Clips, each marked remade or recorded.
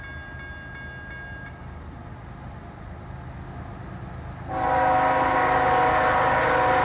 recorded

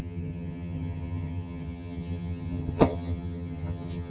remade